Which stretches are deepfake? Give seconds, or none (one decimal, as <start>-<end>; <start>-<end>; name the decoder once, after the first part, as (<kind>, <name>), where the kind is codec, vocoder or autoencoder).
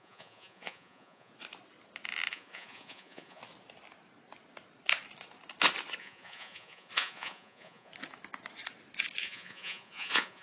0.0-1.3 (vocoder, Vocos); 2.3-3.4; 6.0-7.9; 9.2-10.4